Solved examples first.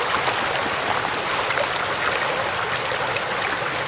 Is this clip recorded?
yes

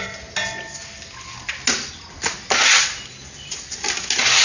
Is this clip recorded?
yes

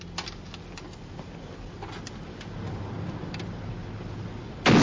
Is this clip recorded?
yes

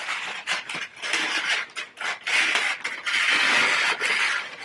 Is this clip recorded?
yes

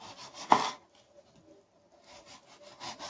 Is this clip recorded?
yes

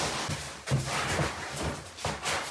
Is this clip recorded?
yes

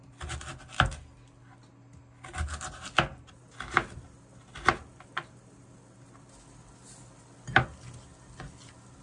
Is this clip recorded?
yes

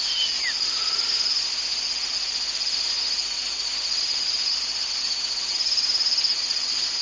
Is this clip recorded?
yes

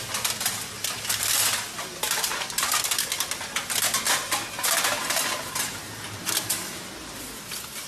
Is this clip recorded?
yes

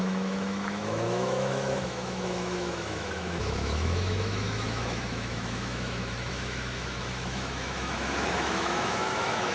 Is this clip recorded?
no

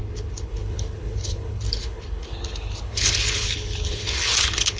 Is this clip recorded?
no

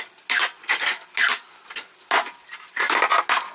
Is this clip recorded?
yes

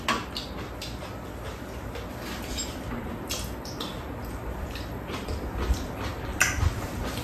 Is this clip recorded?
yes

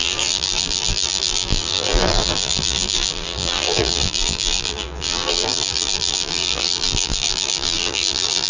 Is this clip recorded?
no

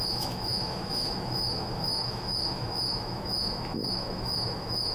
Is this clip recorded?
no